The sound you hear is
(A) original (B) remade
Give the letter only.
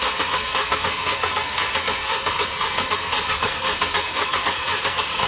B